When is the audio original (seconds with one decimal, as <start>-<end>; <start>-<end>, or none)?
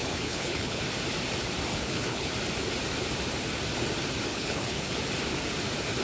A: 0.8-1.7; 2.3-4.3; 5.0-6.0